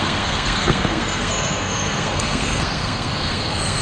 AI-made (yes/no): yes